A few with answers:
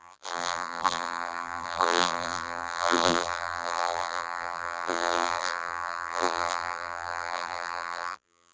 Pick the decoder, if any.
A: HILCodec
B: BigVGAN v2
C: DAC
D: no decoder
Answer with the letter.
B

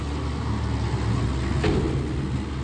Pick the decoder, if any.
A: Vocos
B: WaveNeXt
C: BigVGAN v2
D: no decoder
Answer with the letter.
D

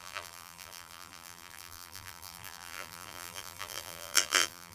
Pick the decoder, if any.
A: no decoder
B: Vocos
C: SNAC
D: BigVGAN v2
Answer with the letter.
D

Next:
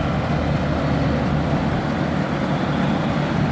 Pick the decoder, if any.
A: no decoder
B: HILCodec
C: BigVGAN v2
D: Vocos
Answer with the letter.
A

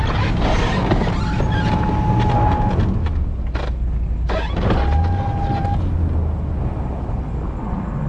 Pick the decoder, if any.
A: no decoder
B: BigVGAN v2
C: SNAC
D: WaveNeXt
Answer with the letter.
A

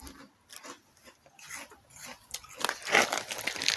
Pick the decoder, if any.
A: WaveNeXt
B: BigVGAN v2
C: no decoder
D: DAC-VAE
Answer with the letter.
C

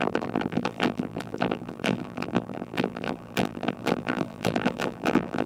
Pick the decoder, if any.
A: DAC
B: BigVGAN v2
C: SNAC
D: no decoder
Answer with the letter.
B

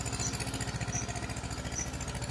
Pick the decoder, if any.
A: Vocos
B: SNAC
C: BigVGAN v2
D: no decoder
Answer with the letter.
D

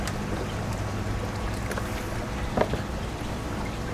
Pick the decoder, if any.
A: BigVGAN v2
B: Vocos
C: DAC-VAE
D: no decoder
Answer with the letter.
D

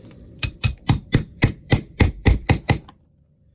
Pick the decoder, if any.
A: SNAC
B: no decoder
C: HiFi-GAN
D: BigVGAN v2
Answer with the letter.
D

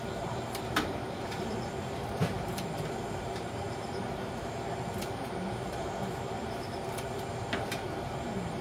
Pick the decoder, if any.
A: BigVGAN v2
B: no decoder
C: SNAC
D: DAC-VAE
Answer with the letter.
A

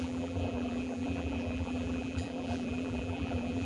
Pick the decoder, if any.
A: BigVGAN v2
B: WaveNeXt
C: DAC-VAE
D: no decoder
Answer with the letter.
A